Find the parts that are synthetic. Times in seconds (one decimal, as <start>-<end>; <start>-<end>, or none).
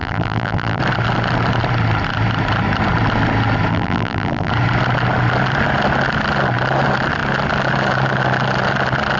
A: 0.0-0.8; 3.7-4.5